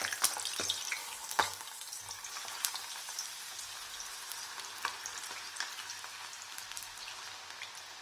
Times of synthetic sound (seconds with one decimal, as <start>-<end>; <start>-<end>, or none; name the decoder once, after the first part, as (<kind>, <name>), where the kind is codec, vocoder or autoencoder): 1.0-2.0 (codec, DAC)